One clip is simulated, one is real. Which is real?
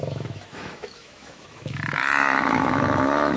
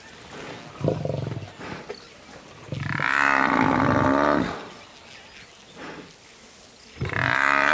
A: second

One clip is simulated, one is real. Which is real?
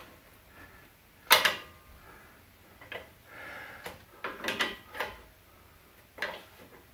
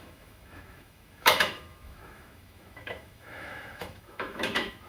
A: first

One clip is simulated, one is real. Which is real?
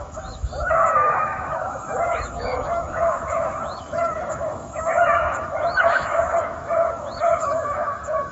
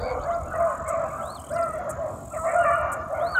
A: second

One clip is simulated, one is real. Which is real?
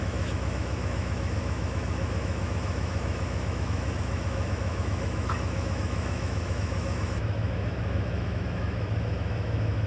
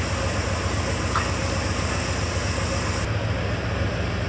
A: second